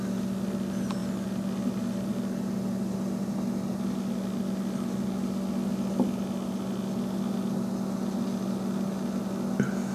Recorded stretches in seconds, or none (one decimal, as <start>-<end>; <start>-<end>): 0.0-9.9